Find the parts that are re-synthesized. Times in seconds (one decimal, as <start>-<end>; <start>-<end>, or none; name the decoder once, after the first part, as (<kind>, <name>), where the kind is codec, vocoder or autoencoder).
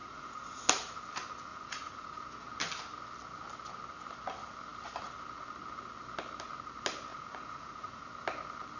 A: 0.0-0.6 (vocoder, Vocos); 1.5-2.1; 7.1-8.1